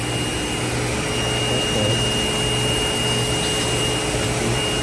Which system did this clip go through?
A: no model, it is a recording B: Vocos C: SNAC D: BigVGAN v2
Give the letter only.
A